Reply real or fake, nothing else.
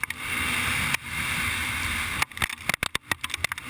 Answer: real